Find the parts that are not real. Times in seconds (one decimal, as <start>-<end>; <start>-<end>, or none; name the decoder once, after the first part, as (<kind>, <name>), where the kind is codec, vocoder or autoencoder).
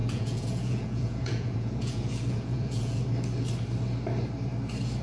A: 0.0-3.0 (vocoder, Vocos)